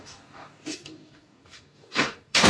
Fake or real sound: fake